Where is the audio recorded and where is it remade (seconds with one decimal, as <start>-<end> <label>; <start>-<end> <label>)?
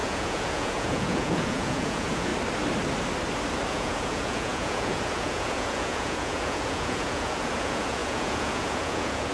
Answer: 0.0-2.3 remade; 2.3-3.7 recorded; 3.7-9.3 remade